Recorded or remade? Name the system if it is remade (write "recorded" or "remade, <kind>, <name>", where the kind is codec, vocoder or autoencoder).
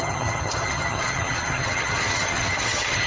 remade, vocoder, HiFi-GAN